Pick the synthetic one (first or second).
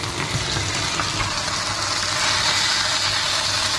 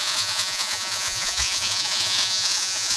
second